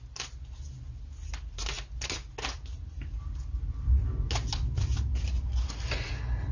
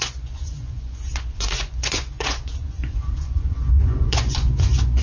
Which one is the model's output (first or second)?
second